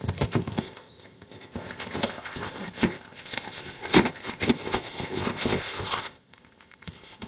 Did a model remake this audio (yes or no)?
yes